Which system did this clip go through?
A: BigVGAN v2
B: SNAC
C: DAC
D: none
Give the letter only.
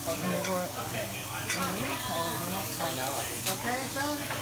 C